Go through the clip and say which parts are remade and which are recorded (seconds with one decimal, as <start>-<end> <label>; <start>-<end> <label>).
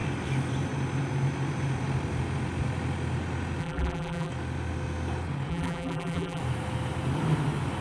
0.0-3.6 recorded; 3.6-4.3 remade; 4.3-5.5 recorded; 5.5-6.4 remade; 6.4-7.8 recorded